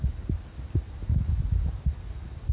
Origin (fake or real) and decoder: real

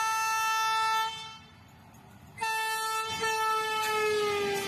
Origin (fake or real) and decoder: real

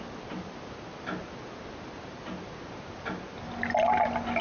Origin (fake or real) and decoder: real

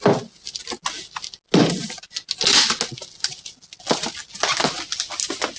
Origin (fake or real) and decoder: real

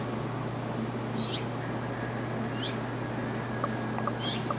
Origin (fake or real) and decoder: real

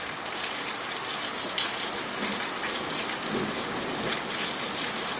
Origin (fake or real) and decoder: real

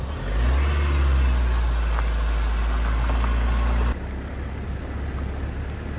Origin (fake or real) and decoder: real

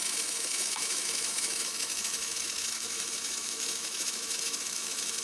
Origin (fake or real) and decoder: fake, autoencoder, DAC-VAE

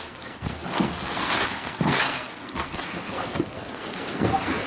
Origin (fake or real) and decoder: fake, codec, SNAC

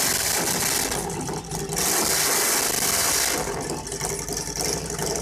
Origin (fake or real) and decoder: real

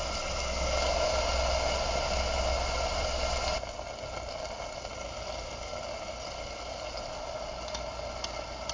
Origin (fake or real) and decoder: real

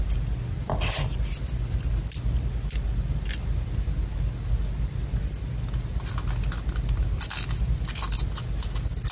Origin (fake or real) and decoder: fake, vocoder, BigVGAN v2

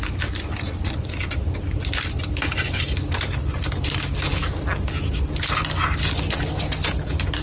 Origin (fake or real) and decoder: real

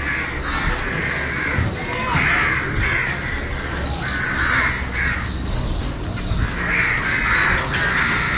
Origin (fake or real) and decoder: real